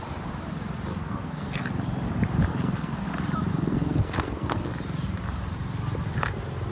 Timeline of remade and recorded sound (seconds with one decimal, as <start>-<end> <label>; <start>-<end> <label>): 0.0-0.9 recorded; 0.9-1.6 remade; 1.6-2.5 recorded; 2.5-3.1 remade; 3.1-3.5 recorded; 3.5-4.7 remade; 4.7-6.7 recorded